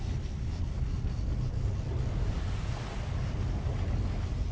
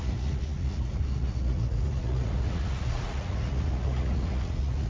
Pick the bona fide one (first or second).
first